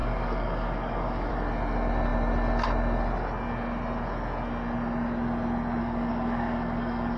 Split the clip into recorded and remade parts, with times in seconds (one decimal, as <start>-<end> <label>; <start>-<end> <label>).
0.0-1.3 remade; 1.3-5.8 recorded; 5.8-7.2 remade